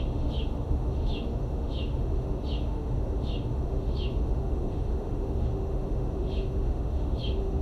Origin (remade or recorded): remade